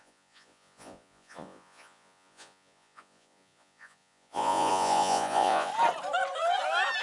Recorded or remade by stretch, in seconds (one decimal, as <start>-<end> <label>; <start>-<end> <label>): 0.0-5.7 remade; 5.7-7.0 recorded